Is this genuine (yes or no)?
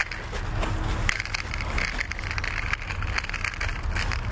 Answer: yes